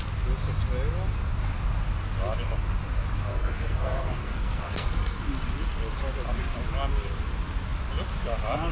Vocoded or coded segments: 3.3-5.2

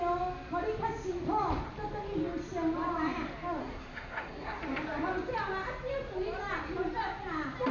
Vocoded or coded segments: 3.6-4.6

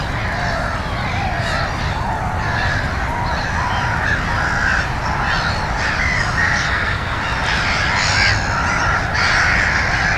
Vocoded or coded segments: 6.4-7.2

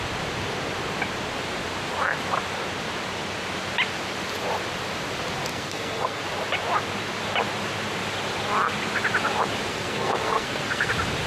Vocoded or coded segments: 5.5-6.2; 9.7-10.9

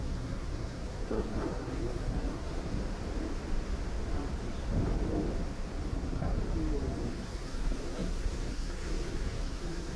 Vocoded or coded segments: 0.0-2.8; 5.9-6.4; 7.1-10.0

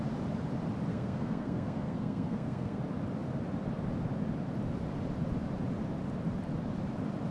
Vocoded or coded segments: 0.9-2.8